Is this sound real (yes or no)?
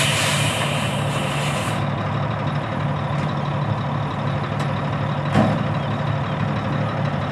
yes